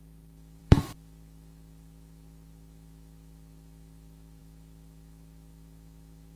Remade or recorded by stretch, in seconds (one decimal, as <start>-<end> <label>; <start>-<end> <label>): 0.0-6.4 remade